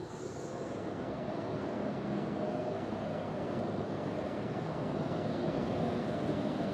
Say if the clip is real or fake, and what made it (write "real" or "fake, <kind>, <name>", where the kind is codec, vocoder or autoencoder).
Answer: fake, codec, SNAC